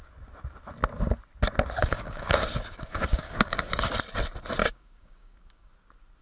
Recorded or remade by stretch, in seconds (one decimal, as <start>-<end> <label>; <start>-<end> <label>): 0.0-1.8 recorded; 1.8-3.9 remade; 3.9-4.6 recorded; 4.6-5.7 remade; 5.7-6.2 recorded